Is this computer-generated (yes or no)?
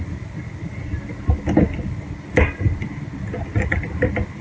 yes